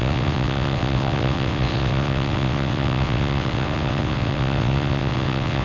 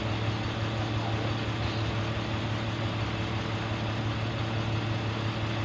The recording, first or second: second